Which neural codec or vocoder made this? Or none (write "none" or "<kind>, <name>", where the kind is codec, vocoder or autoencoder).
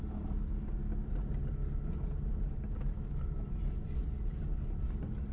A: vocoder, BigVGAN v2